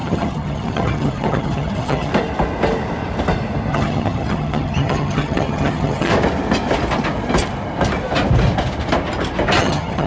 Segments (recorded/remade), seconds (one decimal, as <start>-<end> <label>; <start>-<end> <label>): 0.0-2.1 remade; 2.1-3.7 recorded; 3.7-6.1 remade; 6.1-9.6 recorded; 9.6-10.1 remade